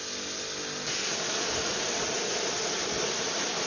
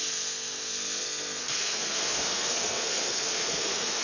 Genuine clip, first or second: first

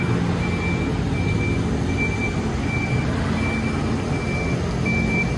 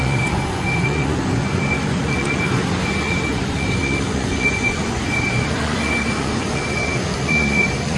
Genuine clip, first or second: first